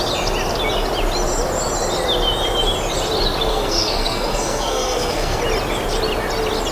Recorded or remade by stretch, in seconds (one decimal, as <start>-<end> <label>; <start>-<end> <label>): 0.0-3.5 recorded; 3.5-5.4 remade; 5.4-6.7 recorded